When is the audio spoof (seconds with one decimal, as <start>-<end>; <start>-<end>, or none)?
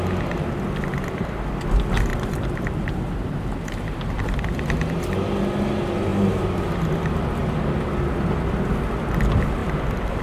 2.1-4.2; 6.1-7.8; 9.6-10.2